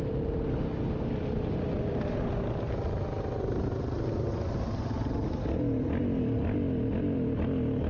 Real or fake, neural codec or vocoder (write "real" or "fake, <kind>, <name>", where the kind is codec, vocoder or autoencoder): real